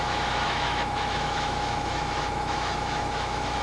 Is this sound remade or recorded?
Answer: remade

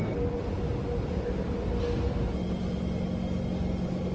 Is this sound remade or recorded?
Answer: recorded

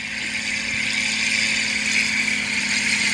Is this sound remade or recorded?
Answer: recorded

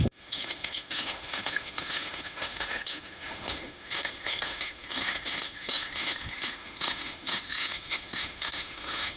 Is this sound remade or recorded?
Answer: remade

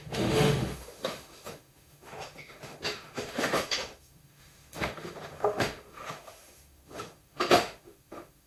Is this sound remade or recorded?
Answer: remade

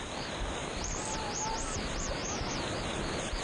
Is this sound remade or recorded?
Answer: recorded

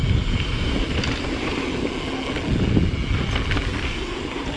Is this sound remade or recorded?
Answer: recorded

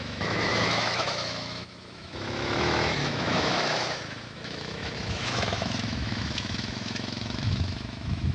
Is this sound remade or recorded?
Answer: remade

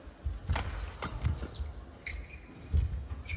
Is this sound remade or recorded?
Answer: recorded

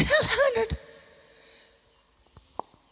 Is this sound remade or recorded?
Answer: recorded